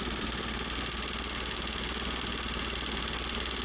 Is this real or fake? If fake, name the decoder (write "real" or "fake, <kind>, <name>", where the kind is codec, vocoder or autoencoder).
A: real